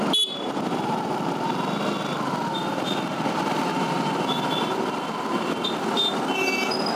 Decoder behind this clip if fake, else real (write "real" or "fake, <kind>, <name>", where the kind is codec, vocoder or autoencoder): real